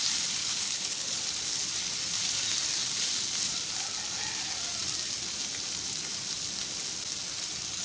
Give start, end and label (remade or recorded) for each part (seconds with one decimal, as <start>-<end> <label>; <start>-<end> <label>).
0.0-0.4 recorded; 0.4-1.2 remade; 1.2-7.8 recorded